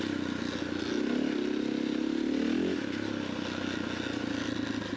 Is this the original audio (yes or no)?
yes